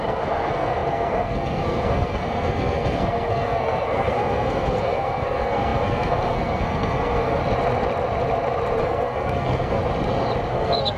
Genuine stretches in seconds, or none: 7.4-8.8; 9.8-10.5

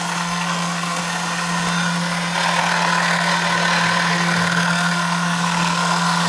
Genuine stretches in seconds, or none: 1.0-2.6; 3.3-4.1

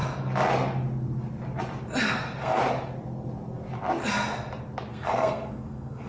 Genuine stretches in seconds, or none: 0.0-2.0; 2.6-4.9

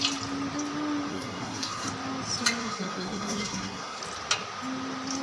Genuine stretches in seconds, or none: 0.0-1.1; 1.9-2.6; 4.0-5.2

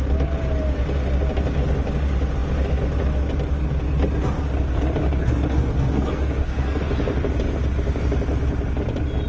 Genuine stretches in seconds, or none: 0.0-5.2; 6.8-9.3

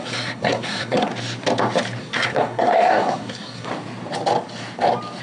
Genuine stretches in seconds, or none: 1.1-2.0; 3.7-5.2

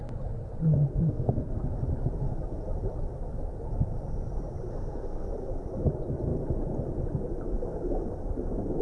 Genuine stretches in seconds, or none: 0.0-0.9; 1.5-4.7; 5.3-8.8

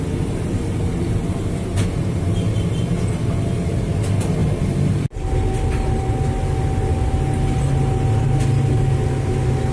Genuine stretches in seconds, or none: 0.0-9.7